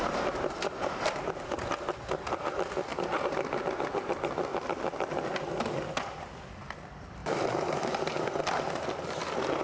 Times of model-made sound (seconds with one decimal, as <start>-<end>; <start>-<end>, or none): 7.2-8.9